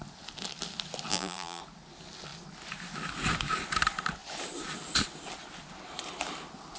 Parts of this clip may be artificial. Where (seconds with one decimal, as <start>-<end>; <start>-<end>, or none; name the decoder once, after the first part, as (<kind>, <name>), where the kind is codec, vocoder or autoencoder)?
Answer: 1.1-1.6 (vocoder, BigVGAN v2)